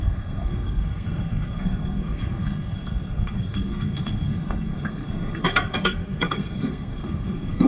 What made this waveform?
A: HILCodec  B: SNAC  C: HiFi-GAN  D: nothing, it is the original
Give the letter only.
B